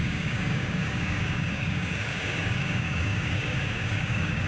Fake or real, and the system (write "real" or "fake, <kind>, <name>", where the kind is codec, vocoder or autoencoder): fake, codec, DAC